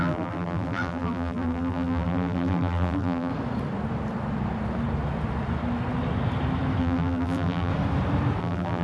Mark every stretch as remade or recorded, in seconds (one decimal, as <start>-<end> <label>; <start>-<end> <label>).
0.0-3.3 remade; 3.3-6.8 recorded; 6.8-7.7 remade; 7.7-8.4 recorded; 8.4-8.8 remade